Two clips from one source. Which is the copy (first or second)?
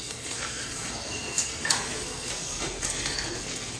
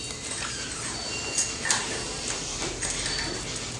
first